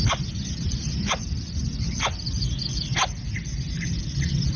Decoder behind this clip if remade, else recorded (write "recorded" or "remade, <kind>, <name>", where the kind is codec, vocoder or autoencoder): recorded